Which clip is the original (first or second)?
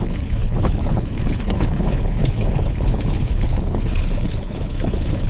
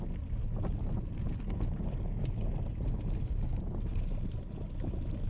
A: second